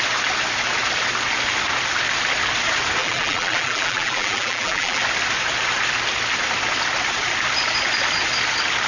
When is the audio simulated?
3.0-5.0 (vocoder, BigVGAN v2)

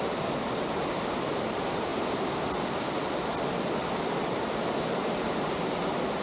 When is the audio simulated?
0.0-1.9 (vocoder, BigVGAN v2); 3.9-6.2

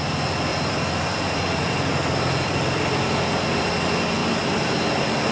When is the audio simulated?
0.5-3.7 (vocoder, BigVGAN v2); 4.2-5.3